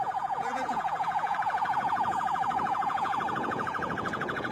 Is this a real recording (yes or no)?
no